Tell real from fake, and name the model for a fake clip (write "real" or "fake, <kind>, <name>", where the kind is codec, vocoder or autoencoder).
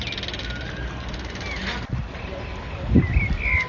real